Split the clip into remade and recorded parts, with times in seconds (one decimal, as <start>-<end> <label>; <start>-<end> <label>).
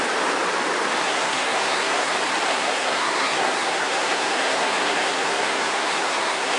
0.0-1.0 recorded; 1.0-2.1 remade; 2.1-2.5 recorded; 2.5-6.6 remade